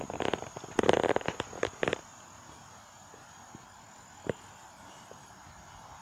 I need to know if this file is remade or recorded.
recorded